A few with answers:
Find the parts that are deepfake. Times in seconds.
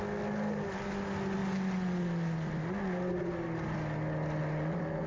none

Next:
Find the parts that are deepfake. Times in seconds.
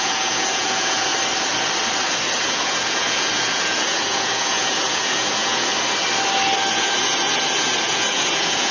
0.0-1.1 (vocoder, Vocos); 2.4-5.7; 6.7-8.7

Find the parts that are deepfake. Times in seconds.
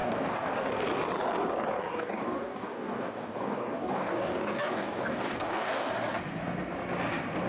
0.0-0.7 (codec, DAC); 1.8-5.9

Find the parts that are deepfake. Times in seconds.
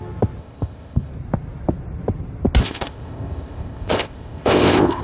0.4-1.1 (codec, ZipCodec); 2.6-5.0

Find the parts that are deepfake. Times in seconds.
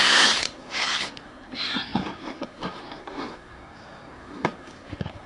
0.0-5.3 (codec, SNAC)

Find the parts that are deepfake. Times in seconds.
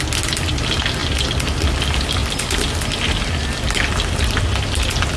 none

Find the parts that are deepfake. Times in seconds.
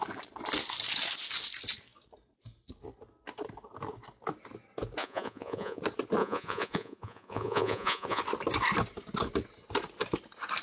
5.0-5.8 (vocoder, Vocos); 6.2-8.2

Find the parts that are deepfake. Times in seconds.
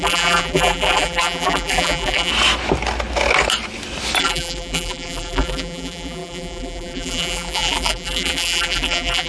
0.0-2.3 (vocoder, BigVGAN v2); 4.2-9.3